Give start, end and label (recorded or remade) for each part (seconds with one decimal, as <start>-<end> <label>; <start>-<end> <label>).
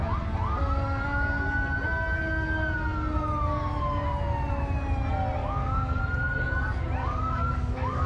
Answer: 0.0-5.4 recorded; 5.4-6.0 remade; 6.0-7.0 recorded; 7.0-8.1 remade